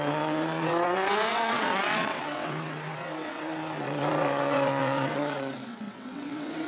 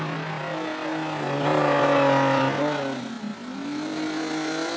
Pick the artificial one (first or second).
first